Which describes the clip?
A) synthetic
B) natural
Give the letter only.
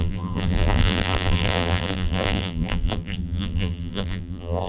A